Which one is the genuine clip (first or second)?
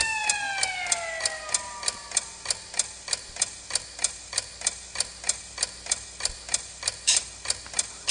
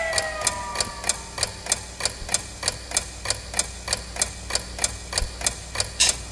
second